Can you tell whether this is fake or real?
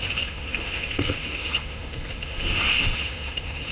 fake